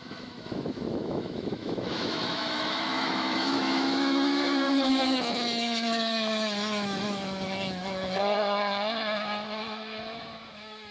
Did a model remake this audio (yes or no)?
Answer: yes